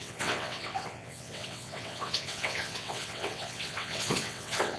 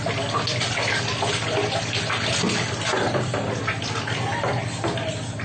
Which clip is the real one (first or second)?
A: second